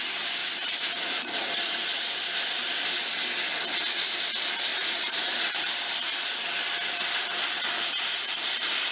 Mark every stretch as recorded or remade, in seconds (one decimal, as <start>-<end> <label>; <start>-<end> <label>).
0.0-0.4 recorded; 0.4-2.2 remade; 2.2-4.7 recorded; 4.7-5.7 remade; 5.7-8.9 recorded

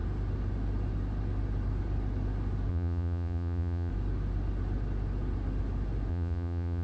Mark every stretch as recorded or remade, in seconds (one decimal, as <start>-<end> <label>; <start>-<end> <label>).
0.0-2.7 recorded; 2.7-3.9 remade; 3.9-6.1 recorded; 6.1-6.8 remade

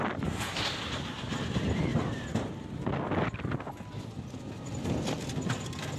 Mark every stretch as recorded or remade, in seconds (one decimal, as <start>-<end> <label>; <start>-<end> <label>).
0.0-6.0 recorded

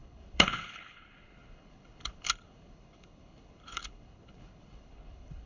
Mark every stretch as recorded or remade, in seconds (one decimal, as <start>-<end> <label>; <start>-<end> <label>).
0.0-5.5 remade

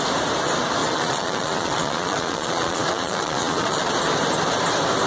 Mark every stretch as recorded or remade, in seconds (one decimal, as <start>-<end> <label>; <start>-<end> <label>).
0.0-0.8 recorded; 0.8-3.9 remade; 3.9-5.1 recorded

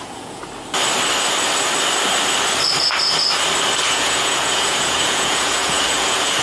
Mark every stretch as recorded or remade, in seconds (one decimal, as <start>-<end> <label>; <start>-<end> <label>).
0.0-0.4 remade; 0.4-3.8 recorded; 3.8-6.4 remade

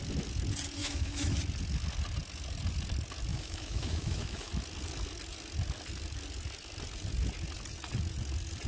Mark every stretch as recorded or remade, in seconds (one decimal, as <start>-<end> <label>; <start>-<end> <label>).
0.0-0.8 recorded; 0.8-1.4 remade; 1.4-3.3 recorded; 3.3-4.5 remade; 4.5-8.7 recorded

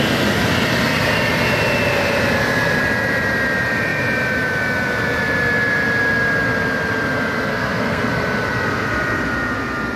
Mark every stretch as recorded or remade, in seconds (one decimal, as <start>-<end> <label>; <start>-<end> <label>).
0.0-7.5 recorded; 7.5-8.0 remade; 8.0-10.0 recorded